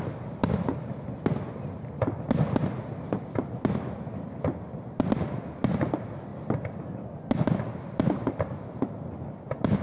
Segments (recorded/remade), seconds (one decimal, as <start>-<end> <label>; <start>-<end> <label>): 0.0-9.8 recorded